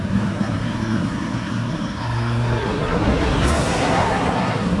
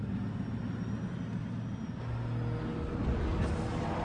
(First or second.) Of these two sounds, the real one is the second